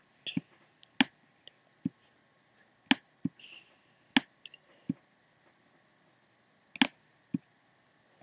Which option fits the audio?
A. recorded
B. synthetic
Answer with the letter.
A